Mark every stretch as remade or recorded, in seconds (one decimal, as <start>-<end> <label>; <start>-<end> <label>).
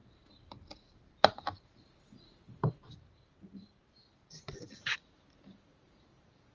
0.0-3.9 remade; 3.9-6.5 recorded